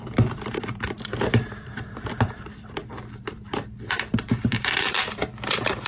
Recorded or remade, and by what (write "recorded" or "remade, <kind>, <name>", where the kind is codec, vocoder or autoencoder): remade, vocoder, BigVGAN v2